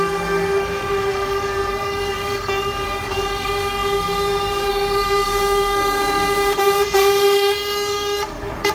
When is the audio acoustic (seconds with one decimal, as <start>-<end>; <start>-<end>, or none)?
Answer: none